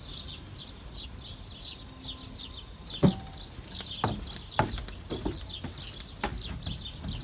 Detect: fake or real real